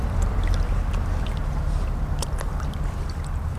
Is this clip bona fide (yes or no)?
no